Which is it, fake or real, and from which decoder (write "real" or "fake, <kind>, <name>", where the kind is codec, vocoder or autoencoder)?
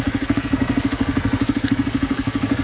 fake, codec, SNAC